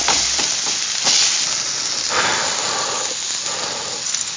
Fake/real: real